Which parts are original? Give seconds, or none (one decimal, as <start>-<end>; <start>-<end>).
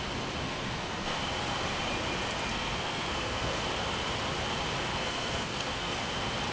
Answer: 0.0-0.4; 1.2-2.5; 3.6-4.9; 6.0-6.5